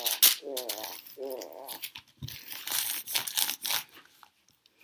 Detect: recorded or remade recorded